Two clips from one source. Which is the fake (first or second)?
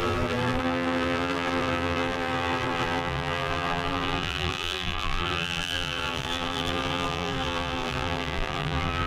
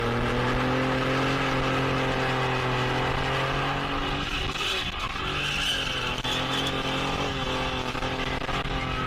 first